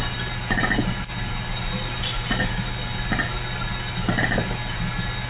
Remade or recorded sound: recorded